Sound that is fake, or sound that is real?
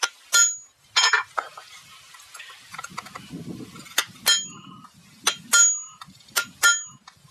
real